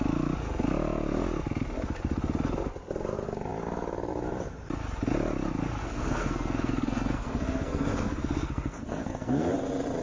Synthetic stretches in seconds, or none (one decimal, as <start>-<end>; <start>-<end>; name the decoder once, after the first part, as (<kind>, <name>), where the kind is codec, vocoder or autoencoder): 5.8-9.5 (codec, SNAC)